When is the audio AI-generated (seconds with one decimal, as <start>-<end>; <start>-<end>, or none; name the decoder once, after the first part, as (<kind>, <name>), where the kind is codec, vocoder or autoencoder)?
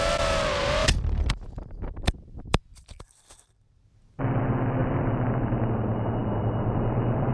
0.8-4.2 (vocoder, BigVGAN v2); 4.8-5.7; 6.2-7.3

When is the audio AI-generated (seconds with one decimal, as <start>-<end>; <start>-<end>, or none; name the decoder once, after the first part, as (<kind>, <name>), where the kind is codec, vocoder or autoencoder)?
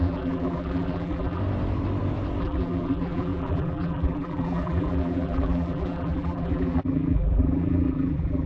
0.0-1.4 (vocoder, BigVGAN v2); 2.4-8.5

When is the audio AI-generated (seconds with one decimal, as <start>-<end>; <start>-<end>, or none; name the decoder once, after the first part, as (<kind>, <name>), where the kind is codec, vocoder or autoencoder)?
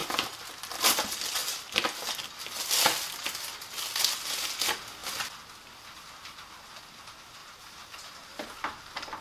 7.4-8.1 (vocoder, BigVGAN v2)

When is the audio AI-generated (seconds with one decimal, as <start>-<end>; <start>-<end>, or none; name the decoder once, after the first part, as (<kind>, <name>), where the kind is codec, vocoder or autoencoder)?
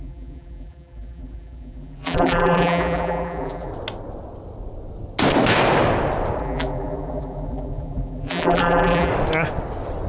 0.0-3.7 (vocoder, BigVGAN v2); 6.4-9.1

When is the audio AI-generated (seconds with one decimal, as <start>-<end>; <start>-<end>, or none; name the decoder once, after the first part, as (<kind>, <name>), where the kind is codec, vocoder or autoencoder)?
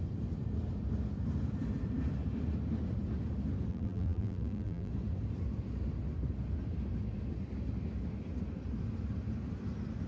3.7-4.9 (vocoder, BigVGAN v2)